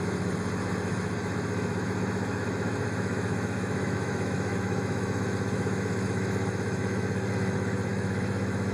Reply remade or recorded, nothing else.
remade